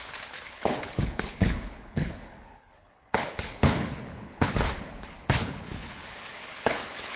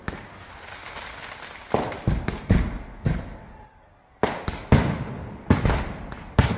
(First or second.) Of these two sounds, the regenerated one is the first